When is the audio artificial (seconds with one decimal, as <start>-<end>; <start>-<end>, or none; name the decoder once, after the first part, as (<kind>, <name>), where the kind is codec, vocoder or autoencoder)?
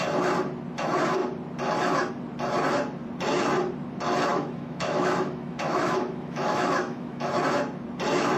4.3-7.4 (autoencoder, DAC-VAE)